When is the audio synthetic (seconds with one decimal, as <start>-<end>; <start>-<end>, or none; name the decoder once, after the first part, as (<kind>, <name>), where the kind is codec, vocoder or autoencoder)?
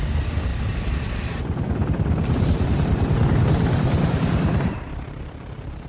0.5-1.4 (vocoder, BigVGAN v2)